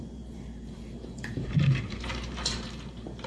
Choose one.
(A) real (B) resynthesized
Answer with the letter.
B